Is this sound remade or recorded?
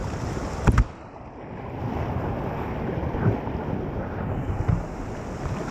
recorded